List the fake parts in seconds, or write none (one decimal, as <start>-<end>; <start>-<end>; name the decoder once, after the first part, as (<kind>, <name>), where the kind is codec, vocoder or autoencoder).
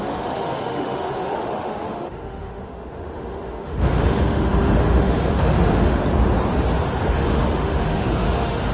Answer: 0.0-6.2 (autoencoder, DAC-VAE); 7.1-8.7